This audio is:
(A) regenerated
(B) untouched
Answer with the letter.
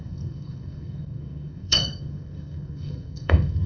A